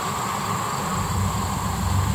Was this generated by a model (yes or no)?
no